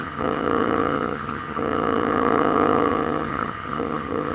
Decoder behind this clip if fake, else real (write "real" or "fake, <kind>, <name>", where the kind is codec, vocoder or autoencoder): fake, vocoder, HiFi-GAN